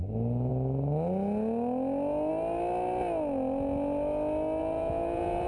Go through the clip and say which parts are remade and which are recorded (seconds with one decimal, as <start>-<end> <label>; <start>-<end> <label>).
0.0-4.6 recorded; 4.6-5.5 remade